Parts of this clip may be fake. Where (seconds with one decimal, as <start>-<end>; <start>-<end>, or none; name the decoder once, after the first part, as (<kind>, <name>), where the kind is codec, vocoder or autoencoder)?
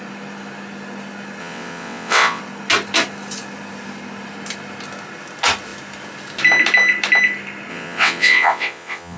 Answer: 1.4-2.4 (vocoder, WaveNeXt); 7.7-9.2